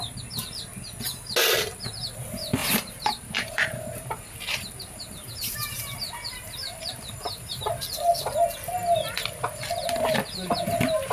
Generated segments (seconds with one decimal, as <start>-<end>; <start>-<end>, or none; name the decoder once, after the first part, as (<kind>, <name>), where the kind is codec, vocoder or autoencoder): 2.6-7.6 (vocoder, BigVGAN v2)